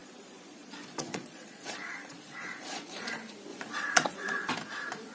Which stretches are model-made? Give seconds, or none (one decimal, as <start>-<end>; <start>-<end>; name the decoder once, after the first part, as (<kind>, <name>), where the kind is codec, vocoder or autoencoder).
0.0-3.1 (vocoder, Vocos); 3.5-4.5

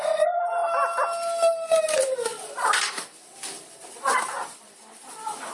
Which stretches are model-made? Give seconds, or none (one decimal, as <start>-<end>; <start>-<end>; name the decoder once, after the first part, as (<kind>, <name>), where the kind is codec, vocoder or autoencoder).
0.0-0.6 (vocoder, BigVGAN v2); 1.8-5.5

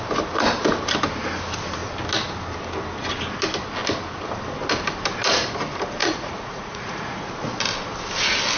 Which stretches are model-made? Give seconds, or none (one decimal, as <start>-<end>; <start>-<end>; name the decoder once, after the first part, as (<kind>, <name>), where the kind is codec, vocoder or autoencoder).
6.0-7.3 (vocoder, Vocos)

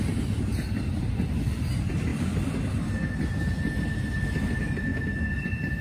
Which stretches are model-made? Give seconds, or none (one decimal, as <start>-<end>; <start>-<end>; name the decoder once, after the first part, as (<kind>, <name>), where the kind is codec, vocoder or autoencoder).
none

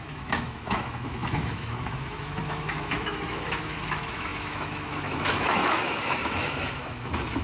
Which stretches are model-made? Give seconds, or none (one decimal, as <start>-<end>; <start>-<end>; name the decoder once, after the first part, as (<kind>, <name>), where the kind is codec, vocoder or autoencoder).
0.0-7.4 (autoencoder, DAC-VAE)